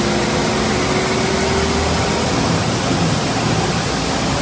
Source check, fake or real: real